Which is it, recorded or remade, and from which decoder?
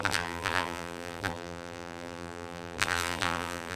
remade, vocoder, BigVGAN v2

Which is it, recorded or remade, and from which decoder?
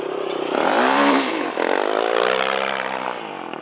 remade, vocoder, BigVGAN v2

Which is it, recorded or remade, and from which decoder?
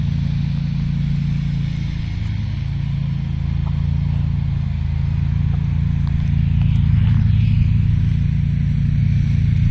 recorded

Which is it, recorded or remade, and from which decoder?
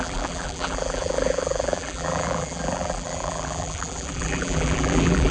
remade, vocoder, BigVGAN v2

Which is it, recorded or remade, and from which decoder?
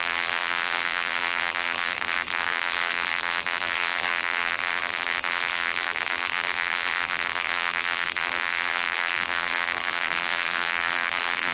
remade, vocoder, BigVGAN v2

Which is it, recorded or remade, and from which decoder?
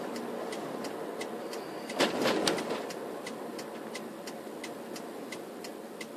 recorded